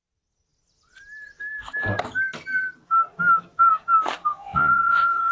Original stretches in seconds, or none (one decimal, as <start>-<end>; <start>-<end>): 0.0-4.3